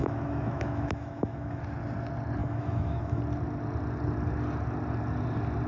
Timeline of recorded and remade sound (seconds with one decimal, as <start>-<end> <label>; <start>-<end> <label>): 0.0-1.6 remade; 1.6-2.4 recorded; 2.4-3.2 remade; 3.2-5.7 recorded